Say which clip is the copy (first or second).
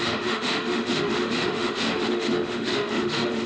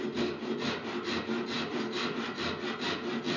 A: first